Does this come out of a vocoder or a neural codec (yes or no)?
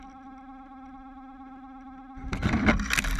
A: no